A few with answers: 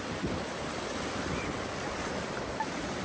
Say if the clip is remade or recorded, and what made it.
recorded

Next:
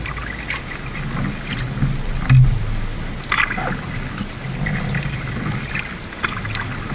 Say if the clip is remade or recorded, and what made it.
recorded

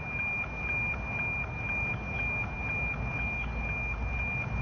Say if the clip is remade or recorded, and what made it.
recorded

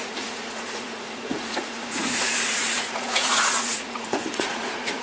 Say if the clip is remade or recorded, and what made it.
remade, vocoder, Vocos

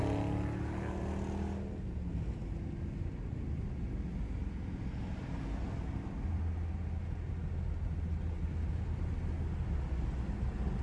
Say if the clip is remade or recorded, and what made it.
recorded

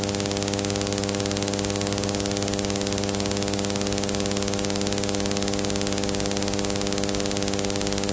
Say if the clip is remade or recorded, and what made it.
recorded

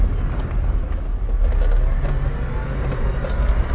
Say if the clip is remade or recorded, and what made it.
recorded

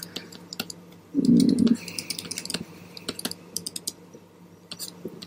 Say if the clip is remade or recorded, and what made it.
recorded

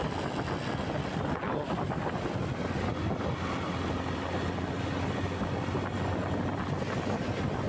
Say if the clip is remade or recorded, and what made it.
recorded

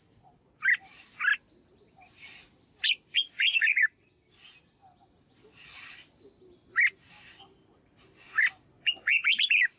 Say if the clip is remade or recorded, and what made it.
recorded